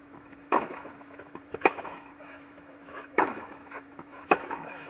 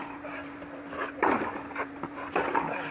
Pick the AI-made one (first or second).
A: first